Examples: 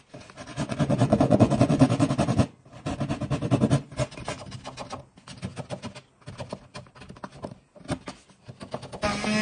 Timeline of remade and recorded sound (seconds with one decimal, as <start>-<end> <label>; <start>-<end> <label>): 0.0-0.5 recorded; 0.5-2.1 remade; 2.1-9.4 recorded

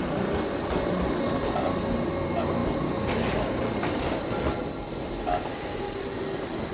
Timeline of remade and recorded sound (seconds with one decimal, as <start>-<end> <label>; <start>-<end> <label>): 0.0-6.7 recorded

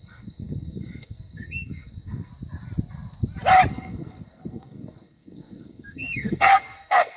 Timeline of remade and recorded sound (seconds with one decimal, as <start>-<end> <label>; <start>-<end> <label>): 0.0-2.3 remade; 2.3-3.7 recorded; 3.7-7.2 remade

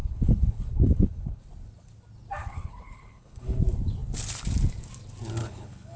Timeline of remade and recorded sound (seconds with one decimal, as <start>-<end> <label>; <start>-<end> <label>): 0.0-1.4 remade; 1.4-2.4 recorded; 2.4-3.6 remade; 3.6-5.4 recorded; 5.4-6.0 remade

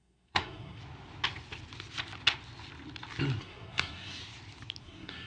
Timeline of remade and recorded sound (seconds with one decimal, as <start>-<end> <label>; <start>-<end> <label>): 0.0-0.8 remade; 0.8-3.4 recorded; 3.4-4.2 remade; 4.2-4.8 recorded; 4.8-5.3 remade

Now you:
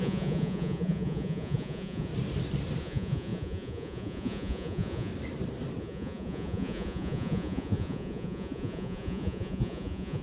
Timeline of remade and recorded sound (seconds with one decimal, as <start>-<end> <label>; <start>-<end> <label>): 0.0-2.1 remade; 2.1-2.8 recorded; 2.8-5.1 remade; 5.1-5.8 recorded; 5.8-10.2 remade